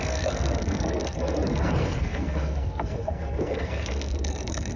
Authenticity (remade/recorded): remade